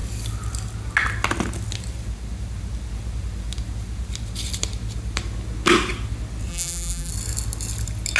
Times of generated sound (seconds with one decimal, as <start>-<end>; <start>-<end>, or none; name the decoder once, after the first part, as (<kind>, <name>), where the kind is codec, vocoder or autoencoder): 6.5-7.1 (vocoder, BigVGAN v2)